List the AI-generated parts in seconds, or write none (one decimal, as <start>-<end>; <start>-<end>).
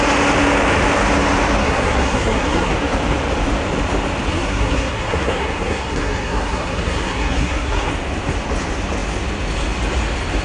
1.6-2.7; 4.3-7.9